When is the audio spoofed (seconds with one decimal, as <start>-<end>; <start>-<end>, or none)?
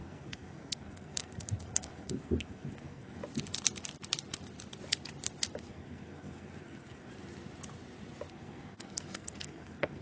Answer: 0.0-3.2; 5.7-7.1; 8.3-10.0